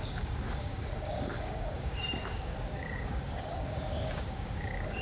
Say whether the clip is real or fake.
fake